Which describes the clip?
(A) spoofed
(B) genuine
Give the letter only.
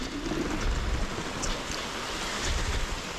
B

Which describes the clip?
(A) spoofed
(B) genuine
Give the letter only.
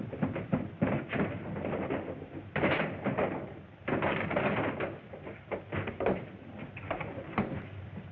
A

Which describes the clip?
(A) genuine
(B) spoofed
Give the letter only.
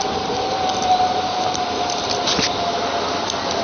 B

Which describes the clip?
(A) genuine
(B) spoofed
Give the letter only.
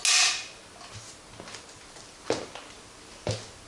A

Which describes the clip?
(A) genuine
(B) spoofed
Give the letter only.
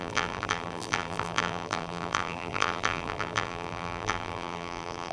B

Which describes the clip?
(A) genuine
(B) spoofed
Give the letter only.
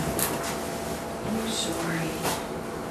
A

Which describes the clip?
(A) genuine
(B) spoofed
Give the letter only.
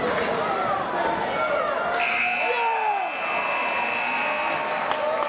A